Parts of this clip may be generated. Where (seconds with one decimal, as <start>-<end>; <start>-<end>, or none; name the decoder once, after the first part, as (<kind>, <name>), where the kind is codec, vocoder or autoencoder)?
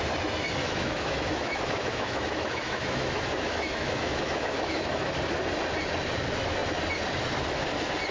0.6-5.1 (autoencoder, DAC-VAE)